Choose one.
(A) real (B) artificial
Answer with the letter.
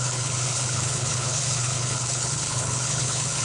B